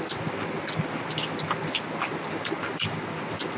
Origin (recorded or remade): recorded